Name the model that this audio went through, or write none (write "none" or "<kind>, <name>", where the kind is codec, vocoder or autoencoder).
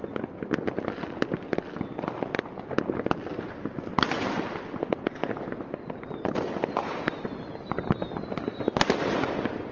none